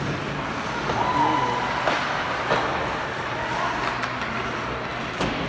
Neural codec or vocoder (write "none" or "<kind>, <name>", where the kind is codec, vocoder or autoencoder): none